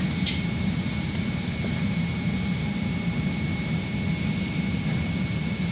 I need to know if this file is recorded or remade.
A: remade